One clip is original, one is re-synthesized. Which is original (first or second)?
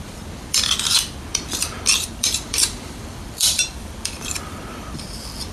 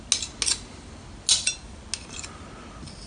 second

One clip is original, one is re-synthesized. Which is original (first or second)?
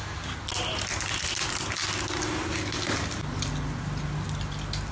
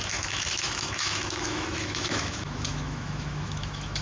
first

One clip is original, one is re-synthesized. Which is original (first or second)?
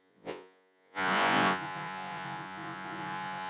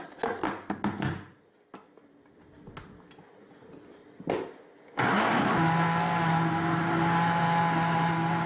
second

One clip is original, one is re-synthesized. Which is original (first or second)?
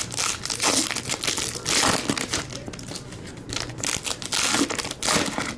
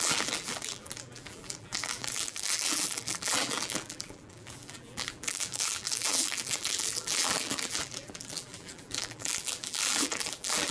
first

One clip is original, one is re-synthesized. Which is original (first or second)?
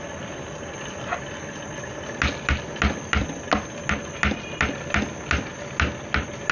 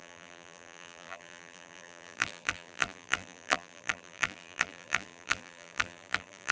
first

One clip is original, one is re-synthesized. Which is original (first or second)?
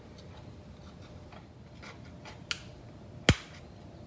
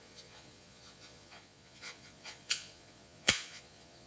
first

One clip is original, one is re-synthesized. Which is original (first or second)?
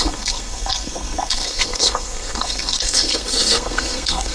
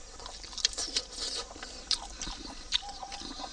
second